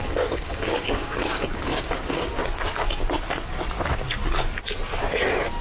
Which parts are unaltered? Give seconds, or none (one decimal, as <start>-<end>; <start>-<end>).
2.4-5.6